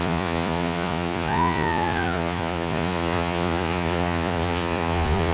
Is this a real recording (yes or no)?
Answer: no